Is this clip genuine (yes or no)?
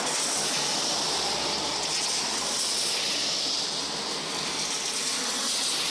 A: yes